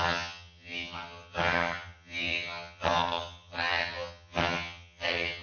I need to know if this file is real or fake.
fake